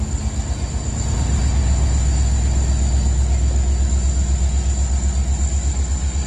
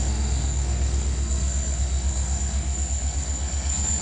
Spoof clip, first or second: second